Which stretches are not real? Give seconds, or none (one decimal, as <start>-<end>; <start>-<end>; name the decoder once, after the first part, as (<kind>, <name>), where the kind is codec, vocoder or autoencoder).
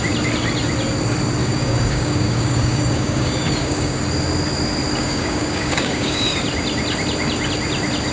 1.4-4.0 (codec, DAC); 5.0-6.4